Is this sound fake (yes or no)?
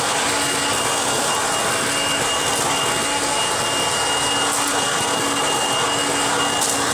no